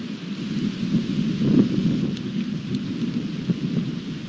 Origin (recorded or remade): recorded